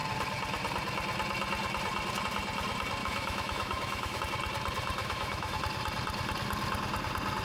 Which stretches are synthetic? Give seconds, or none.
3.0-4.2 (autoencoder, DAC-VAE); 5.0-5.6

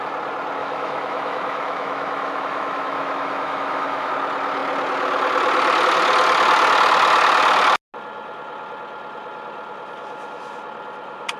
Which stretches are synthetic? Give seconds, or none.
0.6-4.1 (autoencoder, DAC-VAE)

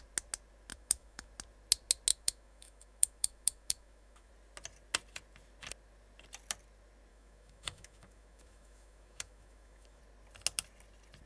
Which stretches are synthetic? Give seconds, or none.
0.7-1.3 (autoencoder, DAC-VAE); 2.1-4.3; 7.1-10.0

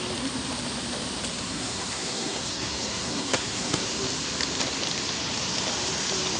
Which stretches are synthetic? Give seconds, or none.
1.3-3.9 (codec, SNAC)

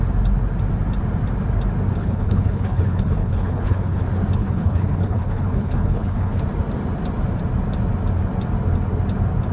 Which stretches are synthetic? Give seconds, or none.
2.0-4.0 (codec, HILCodec); 4.4-6.4

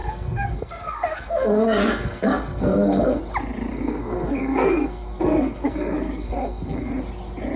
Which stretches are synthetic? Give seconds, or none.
0.0-3.2 (codec, SNAC); 3.7-6.9

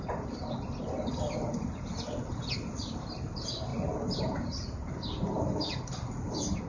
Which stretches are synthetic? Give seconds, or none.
none